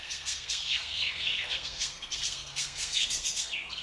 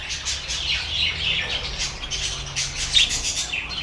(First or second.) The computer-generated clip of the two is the first